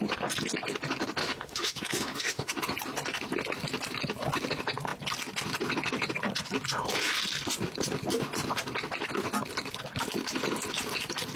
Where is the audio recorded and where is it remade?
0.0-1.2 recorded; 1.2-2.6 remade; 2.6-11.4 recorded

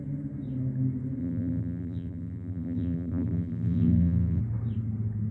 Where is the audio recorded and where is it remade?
0.0-1.2 recorded; 1.2-4.4 remade; 4.4-5.3 recorded